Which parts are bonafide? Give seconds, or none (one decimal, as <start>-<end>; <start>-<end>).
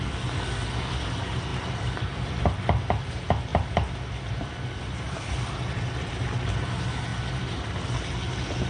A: 0.0-1.5; 3.1-3.5; 6.1-7.1; 7.7-8.7